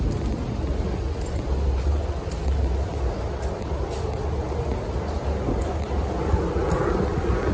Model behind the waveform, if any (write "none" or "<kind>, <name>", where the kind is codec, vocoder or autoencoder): none